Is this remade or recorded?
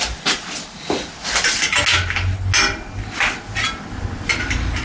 recorded